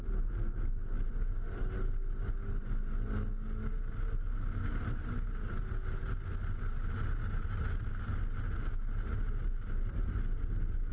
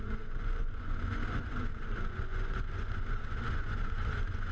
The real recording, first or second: first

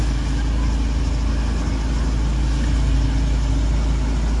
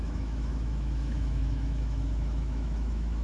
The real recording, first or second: first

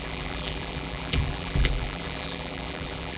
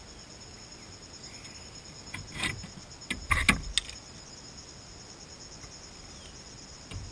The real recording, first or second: second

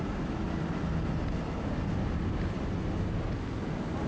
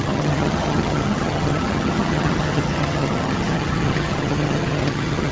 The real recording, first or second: first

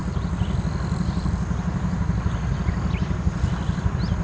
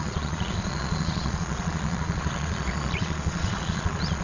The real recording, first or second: first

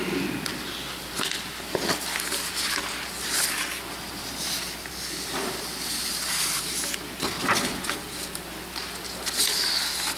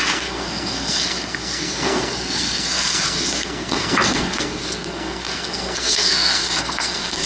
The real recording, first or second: first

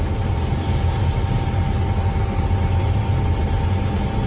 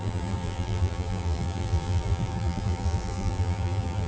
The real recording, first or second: first